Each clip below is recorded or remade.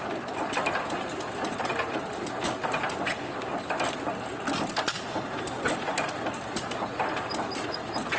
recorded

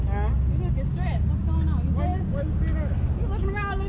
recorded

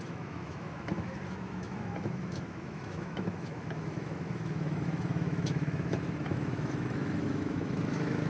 remade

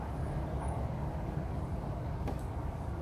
remade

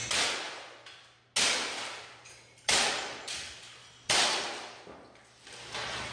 recorded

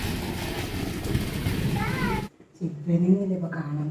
recorded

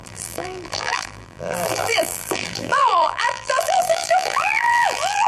remade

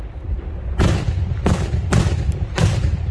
recorded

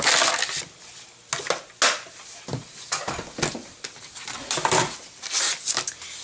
recorded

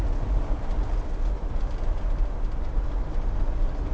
recorded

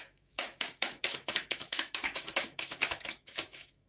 remade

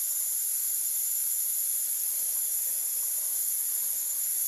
recorded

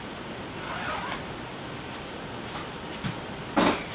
recorded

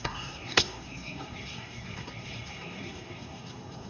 remade